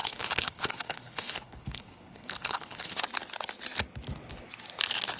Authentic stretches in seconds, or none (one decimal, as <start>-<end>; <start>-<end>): 3.0-5.2